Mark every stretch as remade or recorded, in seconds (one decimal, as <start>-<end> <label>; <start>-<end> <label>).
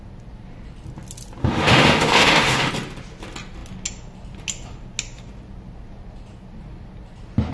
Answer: 0.0-1.4 recorded; 1.4-2.7 remade; 2.7-7.5 recorded